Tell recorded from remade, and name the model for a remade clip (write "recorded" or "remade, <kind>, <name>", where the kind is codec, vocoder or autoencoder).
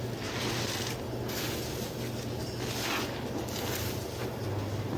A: recorded